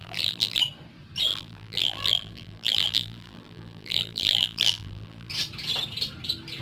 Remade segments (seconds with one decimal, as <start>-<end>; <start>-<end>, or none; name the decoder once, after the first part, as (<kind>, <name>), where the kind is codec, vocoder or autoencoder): 0.0-0.6 (vocoder, BigVGAN v2); 1.3-5.3